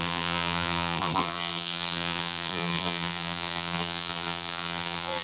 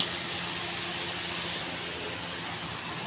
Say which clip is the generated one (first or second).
first